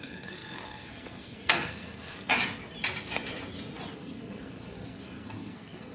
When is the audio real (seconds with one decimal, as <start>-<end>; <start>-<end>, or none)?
2.3-3.9